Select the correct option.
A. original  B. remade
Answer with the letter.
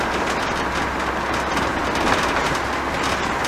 A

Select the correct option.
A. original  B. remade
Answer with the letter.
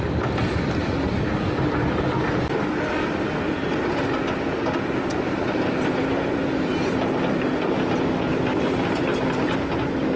A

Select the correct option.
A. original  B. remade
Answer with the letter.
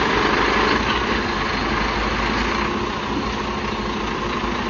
A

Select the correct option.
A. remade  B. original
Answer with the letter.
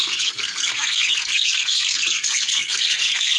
A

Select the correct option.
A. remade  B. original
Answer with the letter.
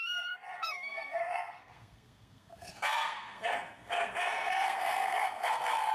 A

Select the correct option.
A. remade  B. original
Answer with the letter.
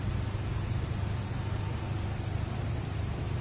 B